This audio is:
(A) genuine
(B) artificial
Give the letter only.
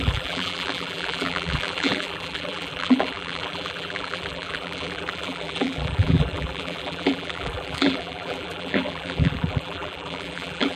B